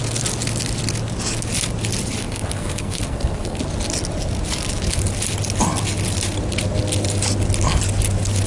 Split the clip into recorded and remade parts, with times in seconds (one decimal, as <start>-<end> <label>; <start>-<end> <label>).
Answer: 0.0-2.2 recorded; 2.2-3.6 remade; 3.6-8.5 recorded